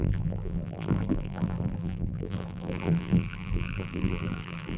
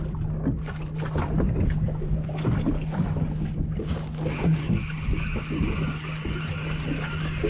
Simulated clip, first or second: first